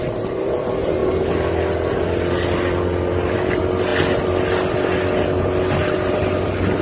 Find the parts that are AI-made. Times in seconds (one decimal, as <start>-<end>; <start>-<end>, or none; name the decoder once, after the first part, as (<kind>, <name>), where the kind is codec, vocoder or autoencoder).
none